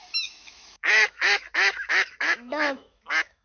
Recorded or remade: remade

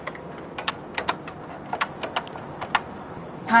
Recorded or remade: recorded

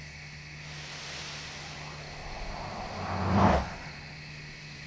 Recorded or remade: recorded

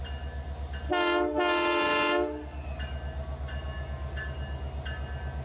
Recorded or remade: recorded